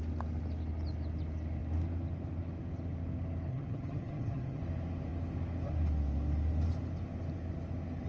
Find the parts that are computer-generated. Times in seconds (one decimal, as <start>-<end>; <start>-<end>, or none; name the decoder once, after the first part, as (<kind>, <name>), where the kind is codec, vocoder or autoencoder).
3.5-4.6 (vocoder, HiFi-GAN)

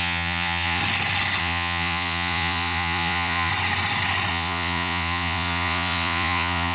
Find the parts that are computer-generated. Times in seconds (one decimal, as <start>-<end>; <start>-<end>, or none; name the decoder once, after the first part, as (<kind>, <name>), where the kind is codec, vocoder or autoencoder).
0.0-0.8 (vocoder, Vocos); 1.4-3.5; 4.3-6.7

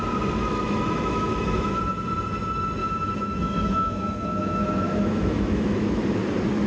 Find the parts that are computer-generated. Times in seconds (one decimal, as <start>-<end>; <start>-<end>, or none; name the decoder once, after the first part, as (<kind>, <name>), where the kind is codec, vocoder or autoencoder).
0.4-1.8 (autoencoder, DAC-VAE); 2.8-6.0

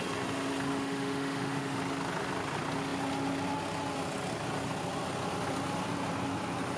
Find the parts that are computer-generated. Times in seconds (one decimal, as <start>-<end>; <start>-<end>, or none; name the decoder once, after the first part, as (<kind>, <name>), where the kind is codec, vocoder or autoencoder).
0.7-1.8 (autoencoder, DAC-VAE)